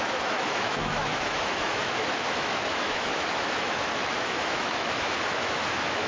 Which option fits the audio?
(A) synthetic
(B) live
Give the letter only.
A